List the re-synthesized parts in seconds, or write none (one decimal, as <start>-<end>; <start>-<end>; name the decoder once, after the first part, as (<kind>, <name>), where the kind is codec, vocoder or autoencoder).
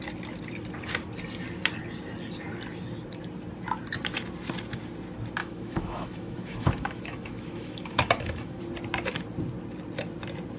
5.4-8.6 (autoencoder, DAC-VAE)